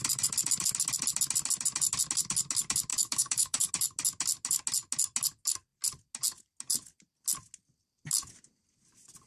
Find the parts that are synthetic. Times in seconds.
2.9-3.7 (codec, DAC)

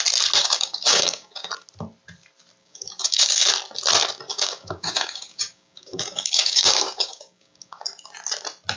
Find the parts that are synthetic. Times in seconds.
0.4-1.5 (codec, DAC); 2.6-3.5; 4.3-7.8

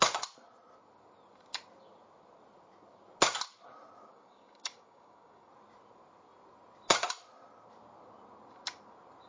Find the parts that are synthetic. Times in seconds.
4.1-5.5 (codec, DAC)